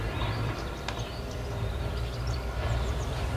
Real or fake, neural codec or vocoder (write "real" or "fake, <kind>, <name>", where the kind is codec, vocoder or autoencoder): fake, vocoder, BigVGAN v2